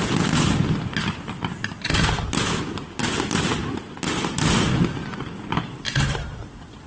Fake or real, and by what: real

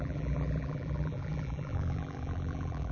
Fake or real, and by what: fake, vocoder, BigVGAN v2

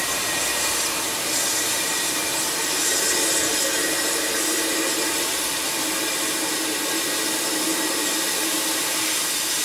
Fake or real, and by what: fake, vocoder, BigVGAN v2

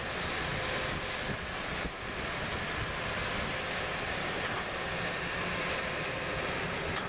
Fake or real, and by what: real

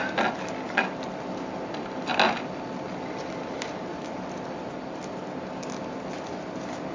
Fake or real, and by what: real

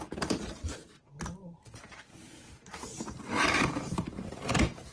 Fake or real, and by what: fake, vocoder, BigVGAN v2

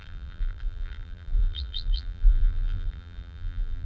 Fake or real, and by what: fake, vocoder, BigVGAN v2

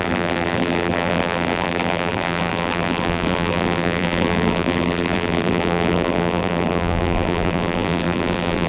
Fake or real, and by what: fake, vocoder, BigVGAN v2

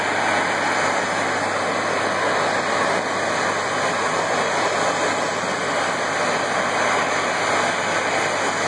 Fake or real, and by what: real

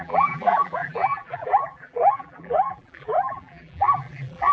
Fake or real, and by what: fake, vocoder, BigVGAN v2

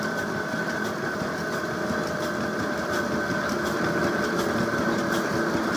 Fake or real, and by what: real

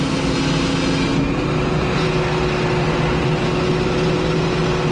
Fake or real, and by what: real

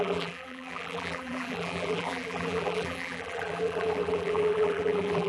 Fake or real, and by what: fake, vocoder, BigVGAN v2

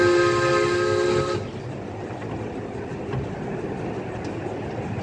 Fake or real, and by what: real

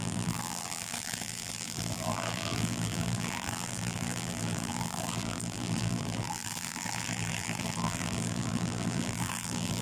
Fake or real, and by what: fake, vocoder, BigVGAN v2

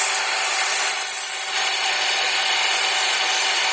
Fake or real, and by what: real